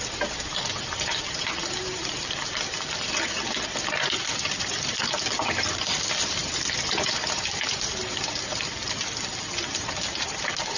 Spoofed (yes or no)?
no